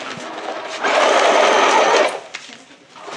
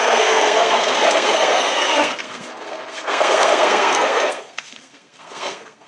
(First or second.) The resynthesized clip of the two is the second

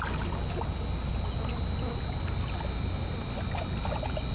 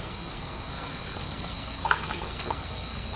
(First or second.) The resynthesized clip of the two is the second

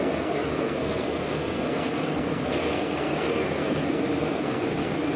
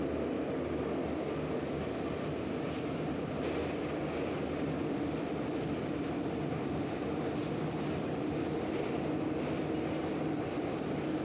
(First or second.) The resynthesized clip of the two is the first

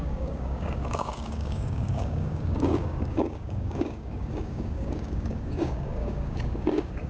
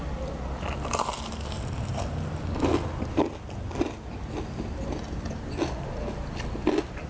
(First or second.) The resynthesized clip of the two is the first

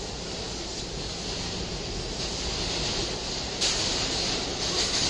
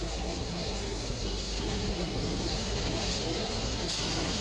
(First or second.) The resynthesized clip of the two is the second